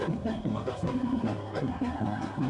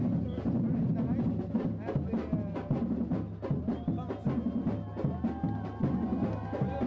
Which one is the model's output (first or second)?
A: first